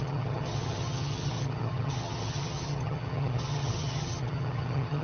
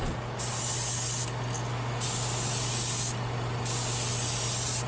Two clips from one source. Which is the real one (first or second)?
second